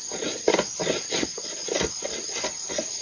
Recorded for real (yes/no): yes